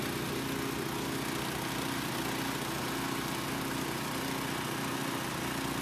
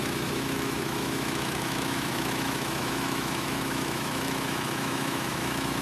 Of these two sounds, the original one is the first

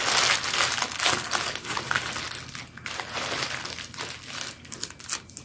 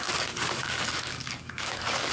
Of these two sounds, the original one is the first